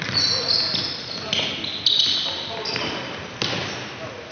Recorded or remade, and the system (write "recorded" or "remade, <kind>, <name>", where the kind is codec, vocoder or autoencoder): recorded